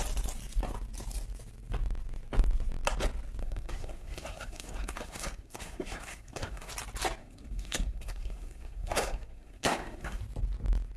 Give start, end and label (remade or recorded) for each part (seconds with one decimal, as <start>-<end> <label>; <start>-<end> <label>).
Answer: 0.0-3.4 recorded; 3.4-6.7 remade; 6.7-7.2 recorded; 7.2-10.2 remade; 10.2-11.0 recorded